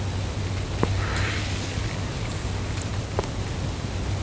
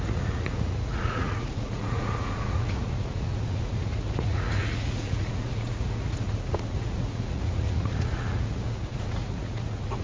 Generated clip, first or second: second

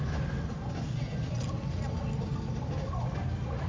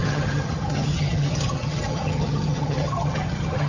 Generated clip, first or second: second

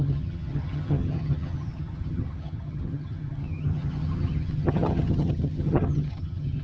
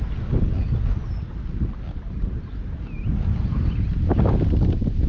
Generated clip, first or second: first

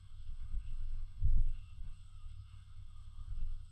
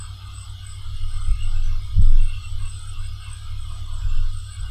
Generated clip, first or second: first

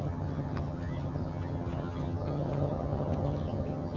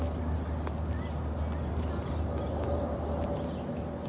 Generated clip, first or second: first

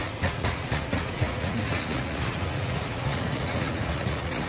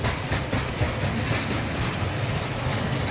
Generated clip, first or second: first